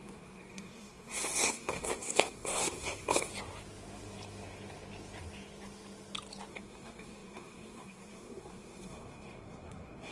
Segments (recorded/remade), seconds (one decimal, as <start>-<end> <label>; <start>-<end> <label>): 0.0-3.3 remade; 3.3-6.5 recorded; 6.5-10.1 remade